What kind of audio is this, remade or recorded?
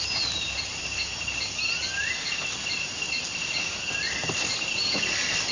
recorded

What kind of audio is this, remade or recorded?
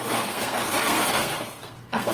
remade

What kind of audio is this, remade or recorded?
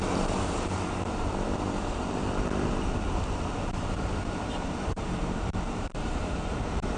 remade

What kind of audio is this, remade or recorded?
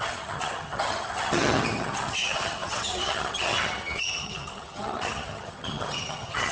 remade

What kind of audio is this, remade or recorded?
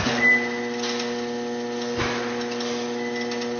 recorded